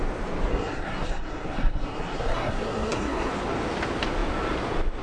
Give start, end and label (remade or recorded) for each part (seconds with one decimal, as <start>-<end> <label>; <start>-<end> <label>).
0.0-0.5 recorded; 0.5-3.3 remade; 3.3-5.0 recorded